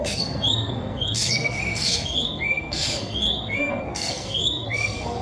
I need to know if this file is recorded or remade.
remade